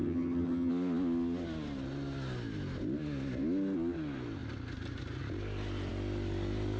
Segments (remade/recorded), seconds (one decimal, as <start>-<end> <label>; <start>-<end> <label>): 0.0-0.7 remade; 0.7-6.8 recorded